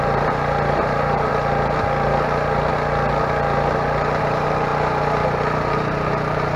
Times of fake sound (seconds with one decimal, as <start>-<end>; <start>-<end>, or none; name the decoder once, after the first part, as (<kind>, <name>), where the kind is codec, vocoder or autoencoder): 0.0-1.3 (vocoder, BigVGAN v2); 4.2-4.7; 5.7-6.6